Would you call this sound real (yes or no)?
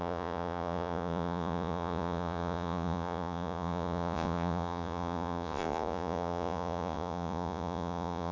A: no